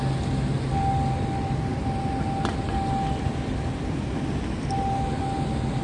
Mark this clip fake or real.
real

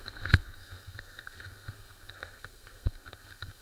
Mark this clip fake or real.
fake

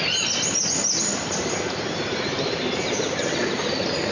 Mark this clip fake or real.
fake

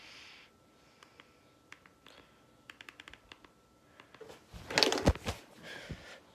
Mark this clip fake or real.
real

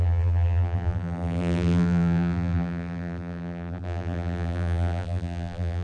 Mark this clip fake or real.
fake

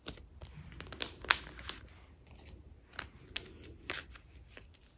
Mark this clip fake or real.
real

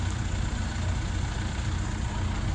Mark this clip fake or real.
real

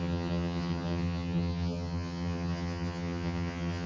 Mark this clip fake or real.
fake